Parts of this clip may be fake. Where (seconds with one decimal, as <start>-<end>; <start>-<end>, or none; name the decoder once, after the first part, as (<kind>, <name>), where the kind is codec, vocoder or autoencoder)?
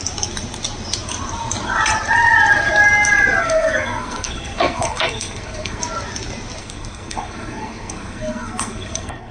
3.4-5.8 (codec, SNAC); 6.6-9.3